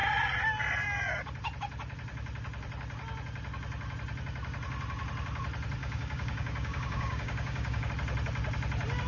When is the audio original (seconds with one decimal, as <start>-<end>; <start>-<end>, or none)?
0.0-5.8; 7.9-9.1